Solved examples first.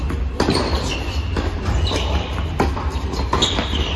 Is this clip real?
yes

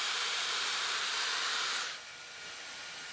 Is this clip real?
no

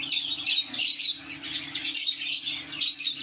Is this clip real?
yes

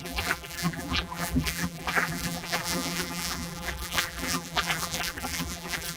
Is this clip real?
no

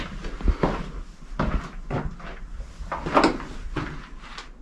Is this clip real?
yes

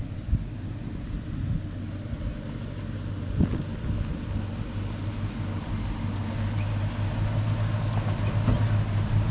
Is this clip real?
yes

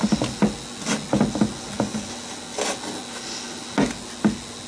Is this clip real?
yes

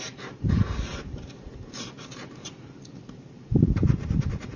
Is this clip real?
no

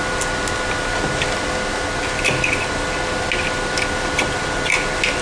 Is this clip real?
yes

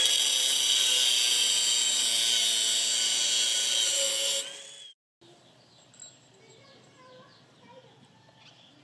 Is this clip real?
yes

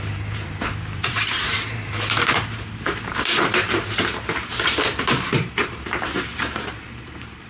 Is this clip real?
no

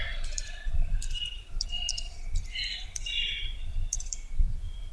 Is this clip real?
yes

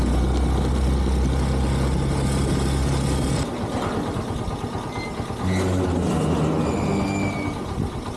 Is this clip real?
yes